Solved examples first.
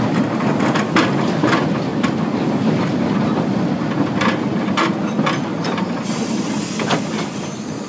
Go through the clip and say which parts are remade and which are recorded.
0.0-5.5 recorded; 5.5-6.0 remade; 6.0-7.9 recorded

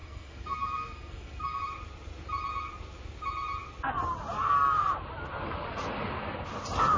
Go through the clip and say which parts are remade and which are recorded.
0.0-1.6 remade; 1.6-7.0 recorded

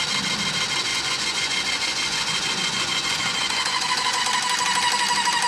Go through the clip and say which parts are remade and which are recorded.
0.0-0.9 recorded; 0.9-4.2 remade; 4.2-5.5 recorded